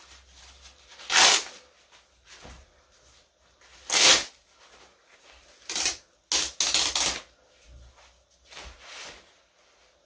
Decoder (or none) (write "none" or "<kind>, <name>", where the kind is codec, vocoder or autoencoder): none